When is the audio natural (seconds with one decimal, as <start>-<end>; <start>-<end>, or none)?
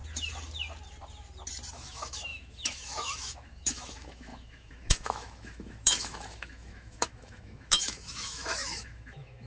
0.0-1.7